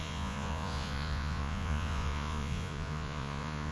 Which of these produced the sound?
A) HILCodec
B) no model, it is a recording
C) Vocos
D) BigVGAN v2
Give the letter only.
C